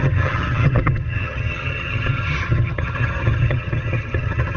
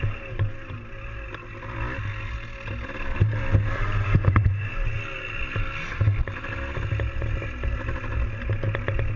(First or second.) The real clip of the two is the second